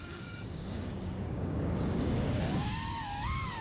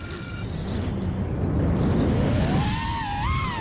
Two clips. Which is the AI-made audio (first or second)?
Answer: first